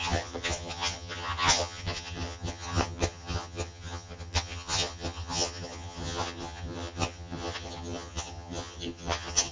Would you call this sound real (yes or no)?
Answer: no